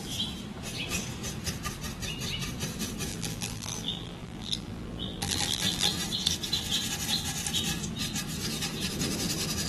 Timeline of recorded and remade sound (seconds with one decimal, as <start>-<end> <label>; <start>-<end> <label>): 0.0-3.1 recorded; 3.1-5.9 remade; 5.9-9.7 recorded

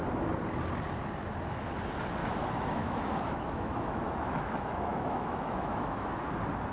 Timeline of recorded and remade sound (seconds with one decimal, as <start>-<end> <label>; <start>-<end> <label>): 0.0-2.2 recorded; 2.2-6.2 remade; 6.2-6.7 recorded

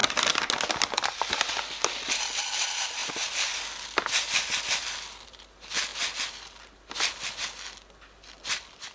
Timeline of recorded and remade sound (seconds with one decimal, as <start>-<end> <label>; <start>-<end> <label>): 0.0-8.9 recorded

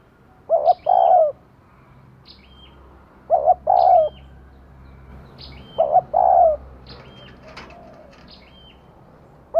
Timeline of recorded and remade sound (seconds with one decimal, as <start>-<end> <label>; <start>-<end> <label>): 0.0-0.9 recorded; 0.9-2.1 remade; 2.1-9.6 recorded

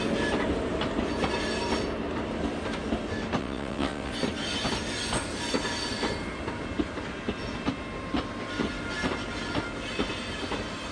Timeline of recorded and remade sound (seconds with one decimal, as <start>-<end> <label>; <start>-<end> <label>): 0.0-3.4 recorded; 3.4-4.1 remade; 4.1-10.9 recorded

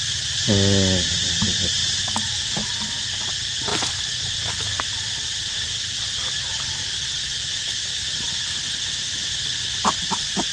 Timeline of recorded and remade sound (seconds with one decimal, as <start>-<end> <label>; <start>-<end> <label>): 0.0-1.1 remade; 1.1-1.8 recorded; 1.8-2.5 remade; 2.5-3.7 recorded; 3.7-8.3 remade; 8.3-10.5 recorded

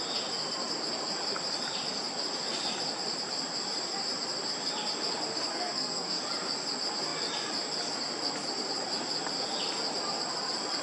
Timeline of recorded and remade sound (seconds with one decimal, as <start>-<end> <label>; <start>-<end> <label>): 0.0-5.5 recorded; 5.5-6.2 remade; 6.2-10.8 recorded